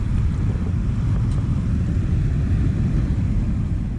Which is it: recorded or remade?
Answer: remade